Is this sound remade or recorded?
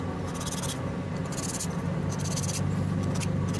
recorded